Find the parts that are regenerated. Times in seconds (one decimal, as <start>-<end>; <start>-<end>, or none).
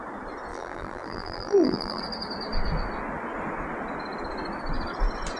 0.5-2.0